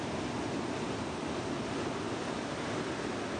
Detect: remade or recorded recorded